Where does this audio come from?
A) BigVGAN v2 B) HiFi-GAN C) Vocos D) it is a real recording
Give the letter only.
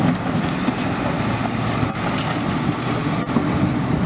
D